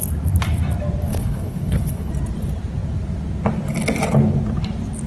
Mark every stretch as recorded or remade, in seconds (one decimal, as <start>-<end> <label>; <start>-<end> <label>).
0.0-1.1 recorded; 1.1-2.1 remade; 2.1-5.1 recorded